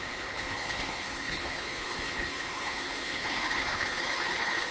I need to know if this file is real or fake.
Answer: fake